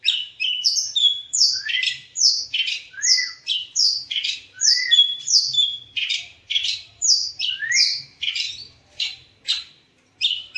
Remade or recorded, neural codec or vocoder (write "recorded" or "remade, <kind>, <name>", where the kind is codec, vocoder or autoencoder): remade, vocoder, BigVGAN v2